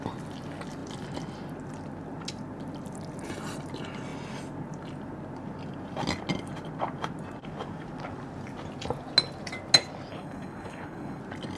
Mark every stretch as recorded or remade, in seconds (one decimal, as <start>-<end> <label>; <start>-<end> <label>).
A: 0.0-10.1 recorded; 10.1-11.2 remade; 11.2-11.6 recorded